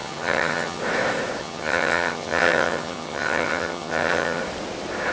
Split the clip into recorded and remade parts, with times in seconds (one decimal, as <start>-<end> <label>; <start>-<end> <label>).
0.0-0.8 remade; 0.8-1.4 recorded; 1.4-4.4 remade; 4.4-5.1 recorded

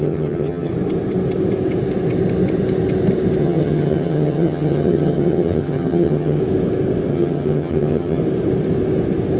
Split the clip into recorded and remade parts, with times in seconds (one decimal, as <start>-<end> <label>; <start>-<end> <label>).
0.0-0.7 remade; 0.7-3.4 recorded; 3.4-6.4 remade; 6.4-7.1 recorded; 7.1-8.2 remade; 8.2-9.4 recorded

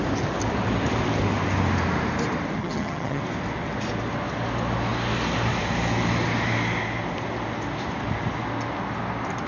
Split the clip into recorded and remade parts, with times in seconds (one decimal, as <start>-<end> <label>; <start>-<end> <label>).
0.0-2.6 recorded; 2.6-3.2 remade; 3.2-9.5 recorded

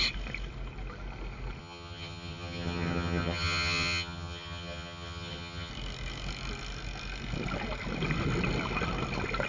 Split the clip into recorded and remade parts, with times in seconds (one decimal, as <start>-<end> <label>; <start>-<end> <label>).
0.0-1.6 recorded; 1.6-5.7 remade; 5.7-9.5 recorded

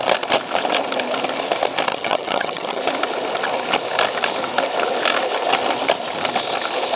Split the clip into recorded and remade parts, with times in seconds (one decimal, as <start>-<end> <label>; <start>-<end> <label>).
0.0-1.9 recorded; 1.9-2.8 remade; 2.8-7.0 recorded

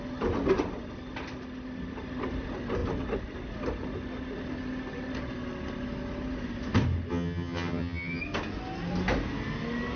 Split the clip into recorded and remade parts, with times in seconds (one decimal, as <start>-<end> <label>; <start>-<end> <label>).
0.0-7.1 recorded; 7.1-8.2 remade; 8.2-10.0 recorded

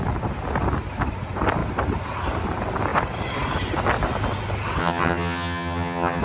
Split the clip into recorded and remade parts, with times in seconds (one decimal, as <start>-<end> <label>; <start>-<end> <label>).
0.0-4.8 recorded; 4.8-6.2 remade